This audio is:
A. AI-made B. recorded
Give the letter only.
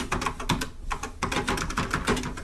B